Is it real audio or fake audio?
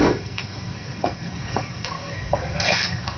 fake